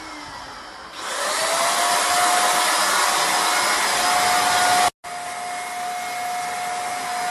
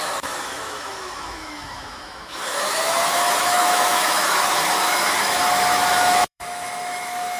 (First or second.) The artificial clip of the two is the second